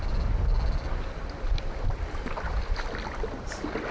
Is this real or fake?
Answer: real